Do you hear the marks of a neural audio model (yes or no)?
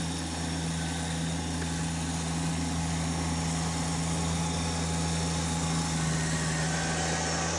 no